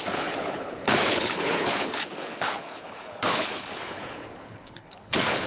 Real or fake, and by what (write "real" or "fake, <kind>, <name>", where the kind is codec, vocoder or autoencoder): fake, codec, HILCodec